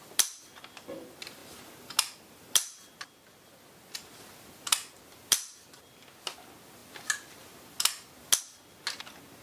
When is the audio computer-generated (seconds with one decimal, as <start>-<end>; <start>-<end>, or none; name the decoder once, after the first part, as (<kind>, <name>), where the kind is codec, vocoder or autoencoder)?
none

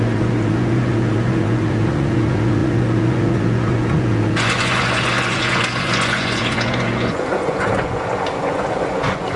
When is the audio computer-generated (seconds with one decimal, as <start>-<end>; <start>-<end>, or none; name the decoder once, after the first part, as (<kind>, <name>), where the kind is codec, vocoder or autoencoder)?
0.0-9.4 (vocoder, Vocos)

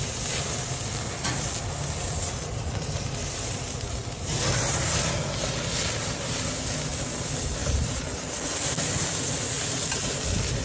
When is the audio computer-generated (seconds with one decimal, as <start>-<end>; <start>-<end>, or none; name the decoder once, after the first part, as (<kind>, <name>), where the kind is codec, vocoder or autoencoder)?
none